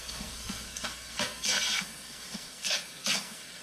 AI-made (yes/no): yes